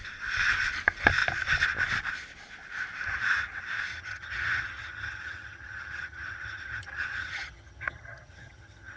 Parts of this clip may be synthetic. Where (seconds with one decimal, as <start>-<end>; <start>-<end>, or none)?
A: 3.9-9.0